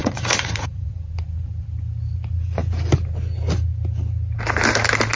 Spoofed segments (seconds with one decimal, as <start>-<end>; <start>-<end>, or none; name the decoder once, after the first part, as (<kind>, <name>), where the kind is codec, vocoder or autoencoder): 0.0-0.9 (vocoder, Vocos)